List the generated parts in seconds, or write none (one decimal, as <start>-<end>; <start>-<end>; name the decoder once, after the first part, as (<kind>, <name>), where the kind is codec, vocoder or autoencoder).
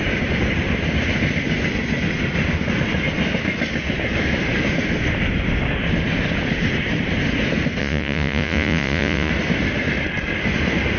7.8-9.3 (vocoder, Vocos)